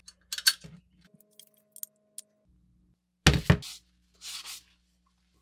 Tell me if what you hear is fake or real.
real